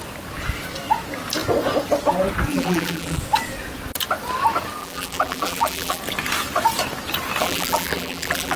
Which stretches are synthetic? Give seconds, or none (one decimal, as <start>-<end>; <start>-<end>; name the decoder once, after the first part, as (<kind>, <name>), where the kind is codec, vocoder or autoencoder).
2.5-3.2 (vocoder, BigVGAN v2); 4.8-6.0; 7.4-8.6